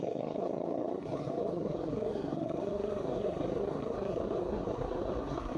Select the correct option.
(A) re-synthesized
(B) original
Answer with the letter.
A